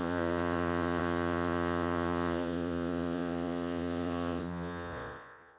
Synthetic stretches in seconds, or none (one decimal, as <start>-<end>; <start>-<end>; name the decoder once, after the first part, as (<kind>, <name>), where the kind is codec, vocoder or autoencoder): 0.0-5.6 (vocoder, Vocos)